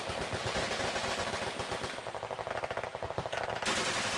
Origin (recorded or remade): recorded